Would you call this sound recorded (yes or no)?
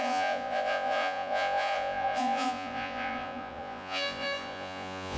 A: no